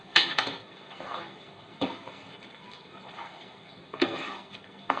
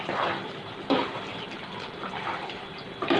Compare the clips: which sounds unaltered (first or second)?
second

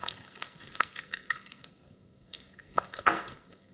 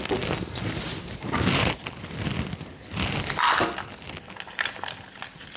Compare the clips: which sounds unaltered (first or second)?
second